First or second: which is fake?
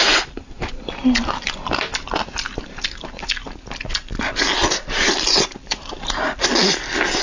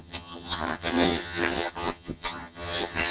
second